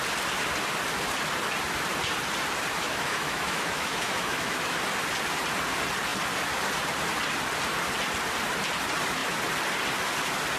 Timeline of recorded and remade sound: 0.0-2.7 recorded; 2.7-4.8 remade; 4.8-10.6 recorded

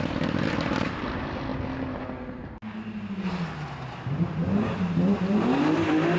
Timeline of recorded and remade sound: 0.0-6.2 recorded

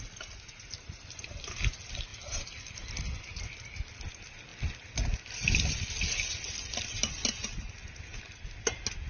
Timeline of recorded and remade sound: 0.0-9.1 recorded